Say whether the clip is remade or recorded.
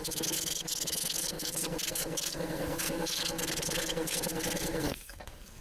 remade